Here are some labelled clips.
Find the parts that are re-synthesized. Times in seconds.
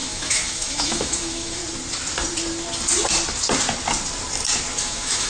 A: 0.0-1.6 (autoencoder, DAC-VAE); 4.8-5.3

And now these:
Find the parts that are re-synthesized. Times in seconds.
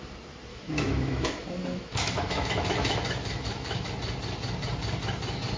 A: 0.5-3.9 (autoencoder, DAC-VAE)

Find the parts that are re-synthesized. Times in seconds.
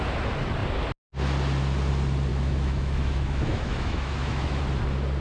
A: 2.3-4.6 (autoencoder, DAC-VAE)